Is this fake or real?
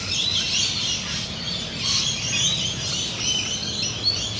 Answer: real